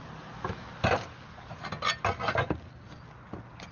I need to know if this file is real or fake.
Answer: real